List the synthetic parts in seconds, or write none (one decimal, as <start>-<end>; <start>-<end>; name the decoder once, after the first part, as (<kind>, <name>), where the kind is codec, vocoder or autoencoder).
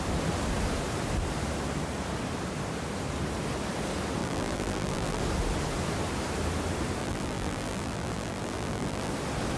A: 4.2-5.2 (vocoder, BigVGAN v2); 7.0-9.1